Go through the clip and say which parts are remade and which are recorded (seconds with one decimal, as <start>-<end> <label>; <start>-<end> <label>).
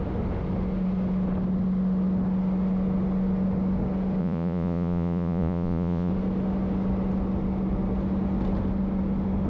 0.0-4.2 recorded; 4.2-6.1 remade; 6.1-9.5 recorded